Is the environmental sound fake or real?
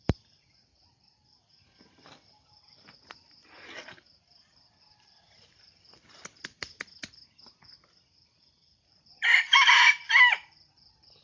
fake